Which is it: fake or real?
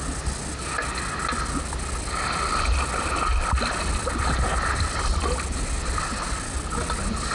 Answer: real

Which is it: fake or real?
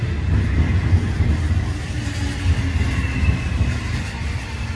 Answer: real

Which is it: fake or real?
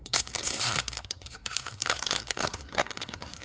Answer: fake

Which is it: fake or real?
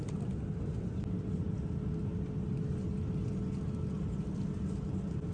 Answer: real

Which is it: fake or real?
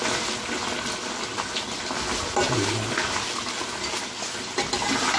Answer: real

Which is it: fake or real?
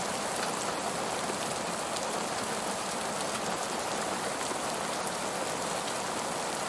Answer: real